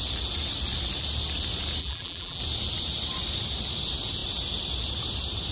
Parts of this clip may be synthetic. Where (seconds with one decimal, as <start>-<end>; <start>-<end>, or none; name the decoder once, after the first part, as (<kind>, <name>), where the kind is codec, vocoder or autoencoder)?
1.8-2.4 (vocoder, BigVGAN v2)